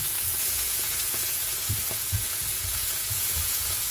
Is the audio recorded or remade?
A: remade